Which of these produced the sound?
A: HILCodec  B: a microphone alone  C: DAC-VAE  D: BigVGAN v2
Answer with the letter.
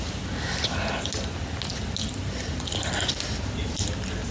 B